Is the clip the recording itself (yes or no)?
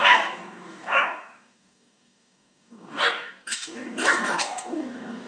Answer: no